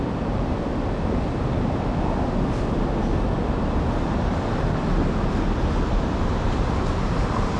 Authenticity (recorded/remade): recorded